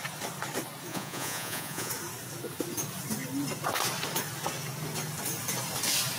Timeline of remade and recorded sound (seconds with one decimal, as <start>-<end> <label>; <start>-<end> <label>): 0.0-0.9 recorded; 0.9-1.9 remade; 1.9-6.2 recorded